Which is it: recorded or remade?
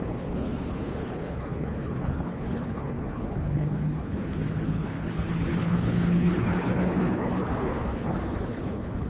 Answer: remade